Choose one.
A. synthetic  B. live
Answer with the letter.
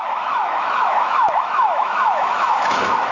A